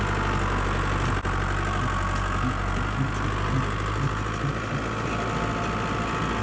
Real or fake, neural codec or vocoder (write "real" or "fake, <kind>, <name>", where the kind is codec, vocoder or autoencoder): real